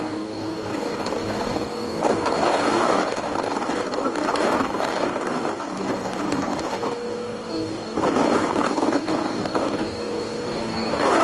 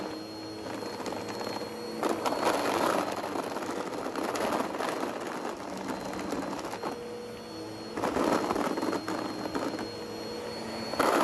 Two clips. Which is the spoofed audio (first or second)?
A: first